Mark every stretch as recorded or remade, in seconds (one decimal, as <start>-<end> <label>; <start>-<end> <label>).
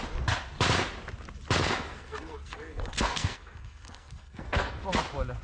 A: 0.0-1.6 recorded; 1.6-4.8 remade; 4.8-5.4 recorded